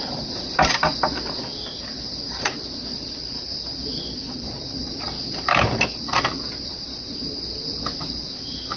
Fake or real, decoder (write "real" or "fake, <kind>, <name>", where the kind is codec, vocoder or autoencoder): real